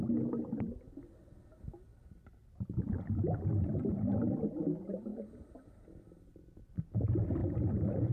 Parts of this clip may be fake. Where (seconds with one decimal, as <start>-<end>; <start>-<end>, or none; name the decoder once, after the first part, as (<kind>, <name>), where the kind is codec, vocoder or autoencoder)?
5.1-6.2 (vocoder, BigVGAN v2); 7.4-8.1

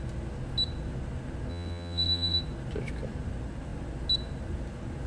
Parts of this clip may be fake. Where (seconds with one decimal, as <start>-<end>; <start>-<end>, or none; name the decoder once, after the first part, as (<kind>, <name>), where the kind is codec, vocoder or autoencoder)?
1.5-2.4 (vocoder, WaveNeXt)

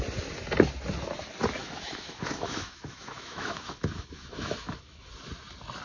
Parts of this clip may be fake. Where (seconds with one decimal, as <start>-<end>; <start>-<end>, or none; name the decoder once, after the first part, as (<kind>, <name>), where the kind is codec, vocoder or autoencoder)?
1.6-5.1 (autoencoder, DAC-VAE)

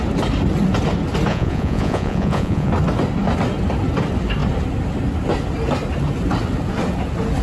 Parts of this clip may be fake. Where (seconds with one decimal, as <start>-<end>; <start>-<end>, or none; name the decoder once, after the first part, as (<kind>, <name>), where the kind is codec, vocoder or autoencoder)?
1.3-2.7 (vocoder, Vocos)

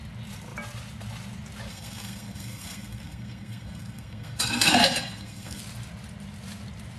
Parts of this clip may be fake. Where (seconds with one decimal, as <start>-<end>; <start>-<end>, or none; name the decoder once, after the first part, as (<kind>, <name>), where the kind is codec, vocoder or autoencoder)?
1.7-5.6 (codec, SNAC)

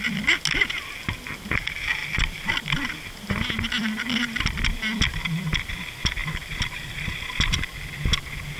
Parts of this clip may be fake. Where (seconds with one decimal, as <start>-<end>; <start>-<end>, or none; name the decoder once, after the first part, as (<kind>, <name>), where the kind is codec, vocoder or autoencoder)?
6.2-7.5 (vocoder, BigVGAN v2)

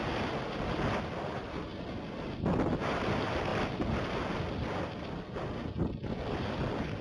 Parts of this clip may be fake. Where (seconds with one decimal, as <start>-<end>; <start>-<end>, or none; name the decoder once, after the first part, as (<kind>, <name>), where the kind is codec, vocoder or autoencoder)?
none

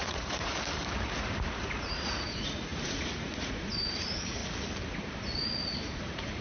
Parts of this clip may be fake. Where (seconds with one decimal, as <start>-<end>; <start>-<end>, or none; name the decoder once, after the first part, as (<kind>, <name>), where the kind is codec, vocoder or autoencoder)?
0.0-0.5 (vocoder, Vocos); 1.6-4.4; 5.8-6.4